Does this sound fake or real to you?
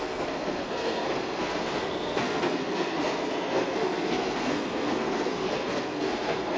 fake